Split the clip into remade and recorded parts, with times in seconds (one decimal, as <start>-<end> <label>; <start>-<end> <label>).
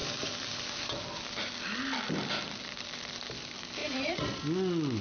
0.0-3.8 recorded; 3.8-4.4 remade; 4.4-5.0 recorded